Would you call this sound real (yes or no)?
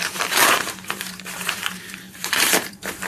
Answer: no